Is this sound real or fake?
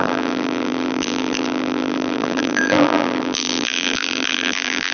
fake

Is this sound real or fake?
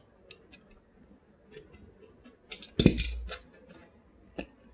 real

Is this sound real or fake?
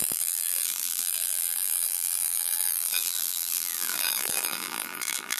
fake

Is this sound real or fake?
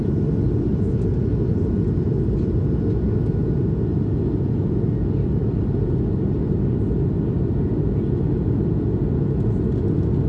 real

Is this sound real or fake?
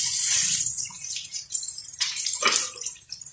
fake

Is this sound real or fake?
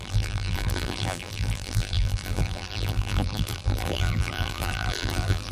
fake